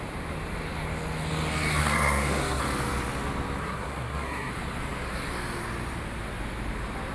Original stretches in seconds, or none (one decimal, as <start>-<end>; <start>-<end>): 0.0-1.8; 2.6-3.6; 4.5-7.1